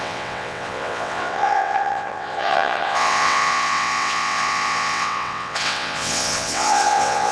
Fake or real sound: fake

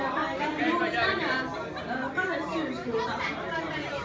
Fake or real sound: real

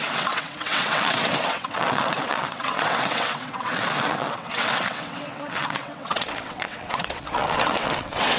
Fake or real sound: fake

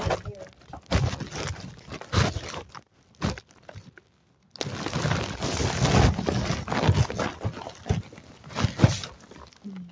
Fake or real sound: real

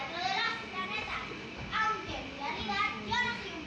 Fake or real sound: real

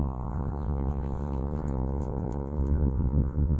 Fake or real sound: fake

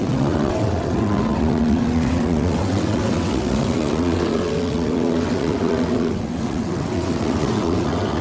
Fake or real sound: fake